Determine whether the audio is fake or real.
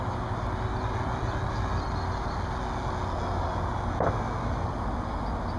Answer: real